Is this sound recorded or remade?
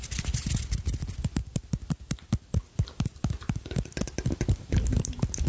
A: recorded